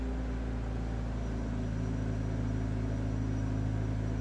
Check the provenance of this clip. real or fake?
real